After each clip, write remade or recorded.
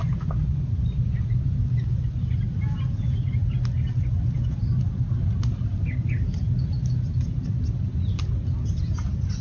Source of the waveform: recorded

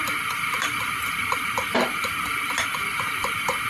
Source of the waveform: remade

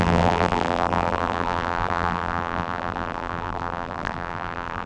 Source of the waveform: remade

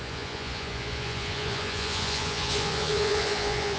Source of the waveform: remade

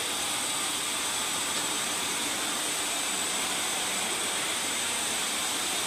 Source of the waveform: remade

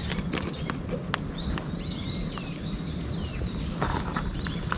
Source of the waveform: recorded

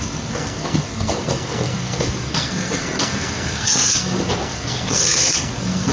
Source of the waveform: remade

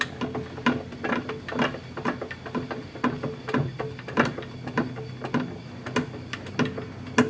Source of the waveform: recorded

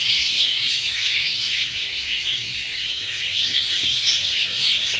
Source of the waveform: remade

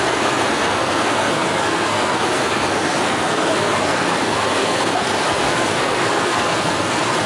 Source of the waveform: remade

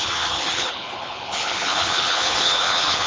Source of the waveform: remade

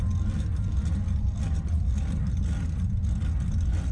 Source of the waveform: recorded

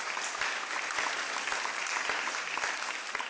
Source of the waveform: recorded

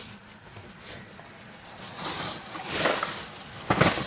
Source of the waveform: recorded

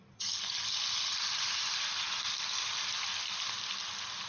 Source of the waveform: recorded